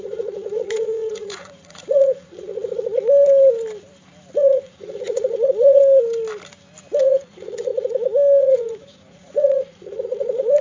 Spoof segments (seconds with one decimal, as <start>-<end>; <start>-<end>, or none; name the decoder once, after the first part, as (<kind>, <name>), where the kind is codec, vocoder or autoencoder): 0.0-2.5 (vocoder, Vocos); 4.4-5.8; 7.0-7.7; 8.4-10.6

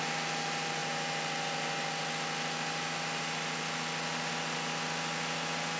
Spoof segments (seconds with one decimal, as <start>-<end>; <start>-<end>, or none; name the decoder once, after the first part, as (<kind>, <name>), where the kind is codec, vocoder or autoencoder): none

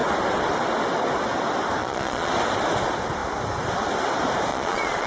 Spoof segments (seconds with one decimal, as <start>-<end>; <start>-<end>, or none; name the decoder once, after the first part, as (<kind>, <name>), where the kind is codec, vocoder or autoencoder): 1.8-2.3 (vocoder, Vocos); 4.5-5.1

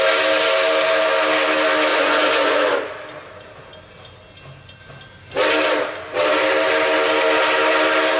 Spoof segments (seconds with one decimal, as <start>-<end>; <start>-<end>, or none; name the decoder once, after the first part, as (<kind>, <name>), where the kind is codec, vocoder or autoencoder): 1.9-2.7 (vocoder, Vocos)

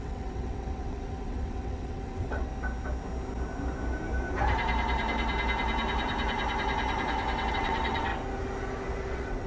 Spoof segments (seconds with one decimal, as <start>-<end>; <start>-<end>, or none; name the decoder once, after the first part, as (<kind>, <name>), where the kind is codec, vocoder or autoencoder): 0.0-2.5 (vocoder, WaveNeXt); 7.5-8.1; 9.1-9.5

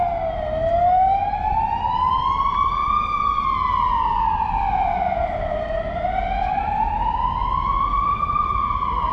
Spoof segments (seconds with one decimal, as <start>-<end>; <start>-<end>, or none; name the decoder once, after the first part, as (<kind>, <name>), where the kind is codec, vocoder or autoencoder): none